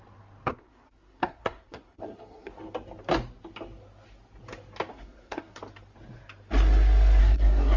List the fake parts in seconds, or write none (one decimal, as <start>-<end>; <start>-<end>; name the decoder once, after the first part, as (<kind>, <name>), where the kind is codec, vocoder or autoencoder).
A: 0.5-2.5 (codec, SNAC); 4.9-5.6; 7.2-7.8